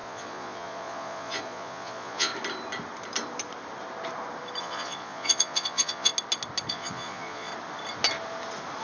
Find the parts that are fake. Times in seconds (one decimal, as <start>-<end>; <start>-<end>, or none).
0.0-2.3; 4.6-6.1; 6.7-7.5

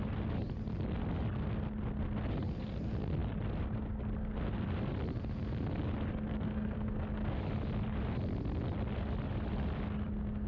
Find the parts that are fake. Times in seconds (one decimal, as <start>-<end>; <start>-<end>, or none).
6.3-6.9

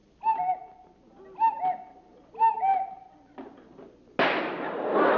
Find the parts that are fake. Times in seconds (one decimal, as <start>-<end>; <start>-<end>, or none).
none

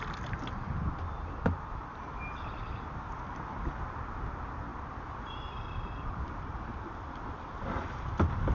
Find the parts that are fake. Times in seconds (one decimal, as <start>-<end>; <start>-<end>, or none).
4.7-6.6

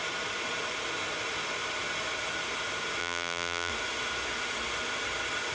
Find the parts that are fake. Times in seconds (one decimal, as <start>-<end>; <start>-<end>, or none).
3.0-3.7

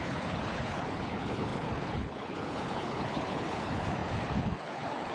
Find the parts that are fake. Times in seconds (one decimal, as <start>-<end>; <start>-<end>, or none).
0.0-5.1

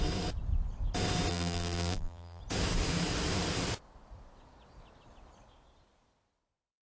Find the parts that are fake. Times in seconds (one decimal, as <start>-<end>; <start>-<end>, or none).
1.3-2.4

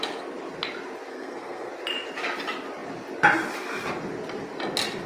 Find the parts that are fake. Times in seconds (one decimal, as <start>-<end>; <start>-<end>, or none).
1.1-1.7